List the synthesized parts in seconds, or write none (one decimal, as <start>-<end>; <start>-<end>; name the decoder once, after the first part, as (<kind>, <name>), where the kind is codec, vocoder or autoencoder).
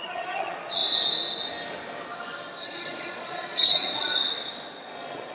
0.0-0.8 (vocoder, Vocos); 2.6-4.2; 4.8-5.3